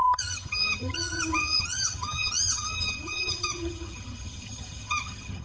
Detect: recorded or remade remade